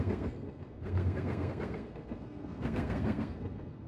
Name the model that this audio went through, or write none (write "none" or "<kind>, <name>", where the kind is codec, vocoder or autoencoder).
codec, SNAC